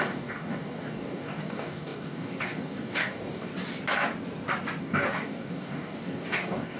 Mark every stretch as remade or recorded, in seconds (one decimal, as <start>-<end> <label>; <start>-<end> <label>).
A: 0.0-3.5 remade; 3.5-4.8 recorded; 4.8-6.8 remade